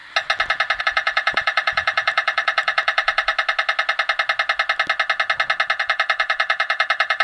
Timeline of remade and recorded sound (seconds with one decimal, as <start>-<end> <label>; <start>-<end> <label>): 0.0-0.8 recorded; 0.8-3.3 remade; 3.3-5.8 recorded; 5.8-7.2 remade